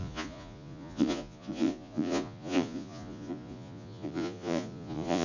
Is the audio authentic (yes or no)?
no